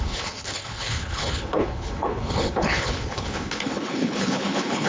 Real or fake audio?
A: fake